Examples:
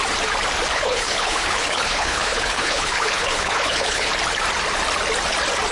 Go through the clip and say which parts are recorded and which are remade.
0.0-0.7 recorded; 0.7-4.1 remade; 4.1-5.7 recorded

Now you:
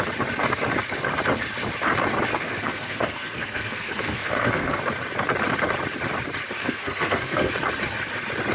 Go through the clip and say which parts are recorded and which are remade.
0.0-2.3 recorded; 2.3-4.8 remade; 4.8-6.6 recorded; 6.6-7.5 remade; 7.5-8.5 recorded

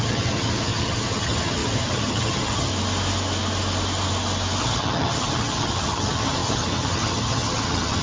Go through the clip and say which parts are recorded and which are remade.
0.0-2.7 remade; 2.7-4.6 recorded; 4.6-8.0 remade

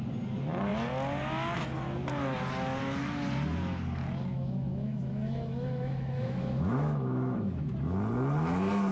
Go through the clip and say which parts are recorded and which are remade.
0.0-4.3 recorded; 4.3-7.7 remade; 7.7-8.9 recorded

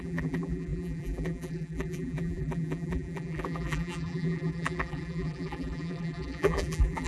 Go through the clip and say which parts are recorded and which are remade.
0.0-7.1 remade

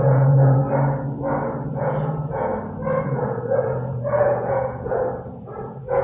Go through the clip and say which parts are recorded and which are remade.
0.0-0.6 remade; 0.6-1.7 recorded; 1.7-2.5 remade; 2.5-3.0 recorded; 3.0-5.0 remade; 5.0-5.6 recorded; 5.6-6.0 remade